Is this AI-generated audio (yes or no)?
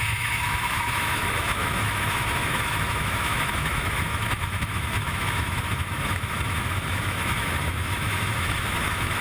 yes